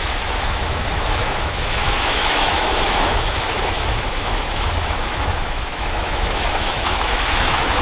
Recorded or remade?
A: remade